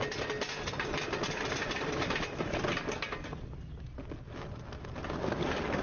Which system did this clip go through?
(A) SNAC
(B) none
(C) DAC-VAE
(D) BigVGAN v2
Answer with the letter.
B